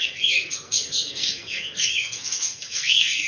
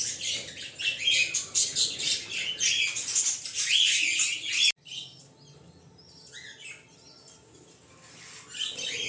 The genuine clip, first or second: second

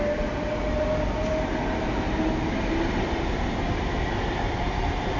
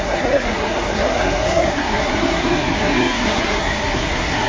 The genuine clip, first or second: first